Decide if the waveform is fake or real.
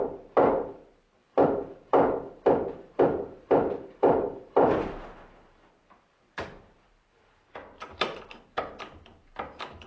fake